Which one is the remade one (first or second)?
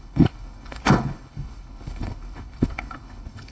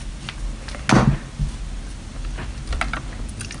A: first